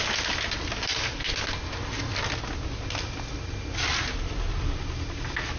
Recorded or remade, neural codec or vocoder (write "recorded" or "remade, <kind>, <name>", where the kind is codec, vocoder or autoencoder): recorded